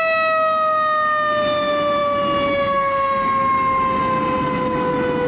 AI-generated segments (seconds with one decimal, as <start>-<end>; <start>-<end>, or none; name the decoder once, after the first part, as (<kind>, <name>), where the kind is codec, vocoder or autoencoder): none